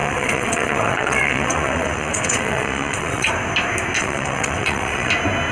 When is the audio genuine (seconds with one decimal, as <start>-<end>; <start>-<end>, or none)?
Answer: 3.3-4.0; 5.1-5.5

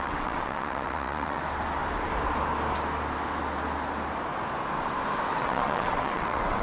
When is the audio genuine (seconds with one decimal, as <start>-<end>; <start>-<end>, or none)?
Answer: 1.4-5.4

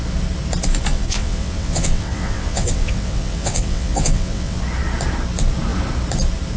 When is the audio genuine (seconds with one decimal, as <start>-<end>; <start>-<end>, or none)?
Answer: 0.0-0.9; 4.6-6.6

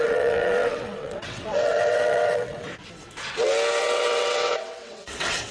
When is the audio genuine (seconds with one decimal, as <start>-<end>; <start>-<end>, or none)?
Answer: 2.7-3.8

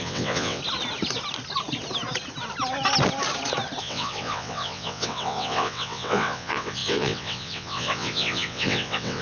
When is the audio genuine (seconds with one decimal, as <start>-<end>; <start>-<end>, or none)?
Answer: 0.6-3.8

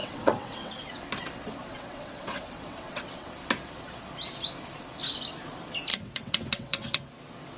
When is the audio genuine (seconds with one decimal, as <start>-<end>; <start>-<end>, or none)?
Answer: 0.7-1.7; 3.3-5.9; 7.0-7.6